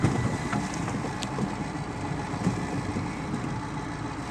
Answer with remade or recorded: recorded